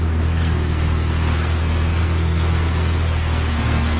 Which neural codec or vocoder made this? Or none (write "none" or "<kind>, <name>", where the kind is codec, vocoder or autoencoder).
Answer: codec, SNAC